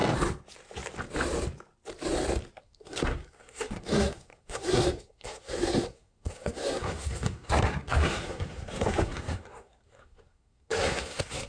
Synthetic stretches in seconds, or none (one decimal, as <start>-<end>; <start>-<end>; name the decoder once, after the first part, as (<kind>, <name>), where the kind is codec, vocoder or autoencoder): 2.6-11.5 (codec, SNAC)